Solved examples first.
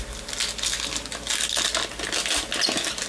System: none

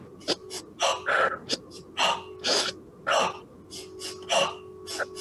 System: none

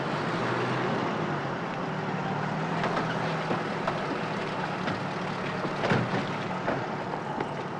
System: none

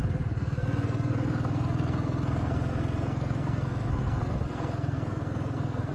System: codec, SNAC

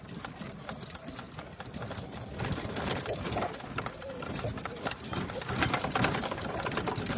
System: none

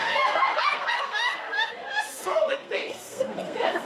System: codec, SNAC